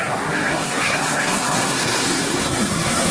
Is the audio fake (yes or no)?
yes